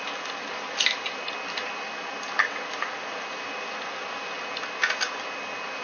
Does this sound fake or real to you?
real